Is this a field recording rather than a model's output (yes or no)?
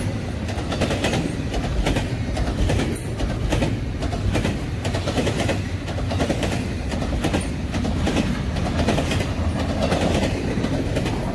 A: yes